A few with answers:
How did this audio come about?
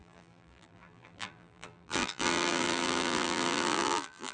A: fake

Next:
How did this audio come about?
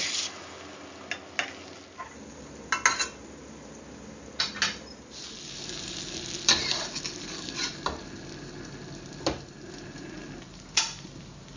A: real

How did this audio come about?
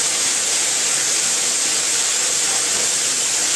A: fake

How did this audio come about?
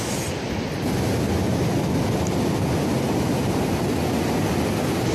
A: real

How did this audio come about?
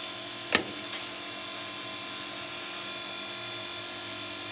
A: real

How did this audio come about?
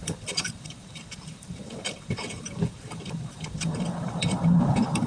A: fake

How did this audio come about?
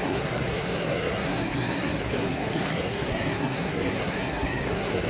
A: fake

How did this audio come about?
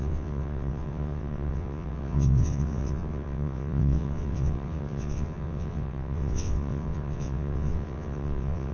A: fake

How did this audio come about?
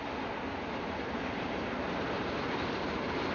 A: real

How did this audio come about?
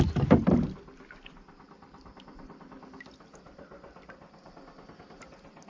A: real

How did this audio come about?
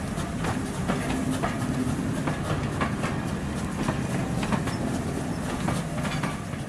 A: real